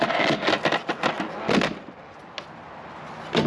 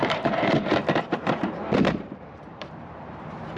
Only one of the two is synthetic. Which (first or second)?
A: second